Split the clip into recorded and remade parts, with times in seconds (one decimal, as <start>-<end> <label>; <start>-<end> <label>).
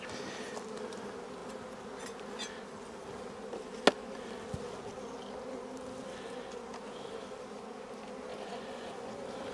0.0-8.3 recorded; 8.3-9.1 remade; 9.1-9.5 recorded